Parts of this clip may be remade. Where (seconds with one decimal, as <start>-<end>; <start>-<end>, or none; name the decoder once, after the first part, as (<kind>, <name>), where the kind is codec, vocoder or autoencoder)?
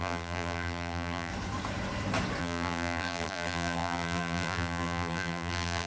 0.0-1.3 (vocoder, BigVGAN v2); 2.4-5.9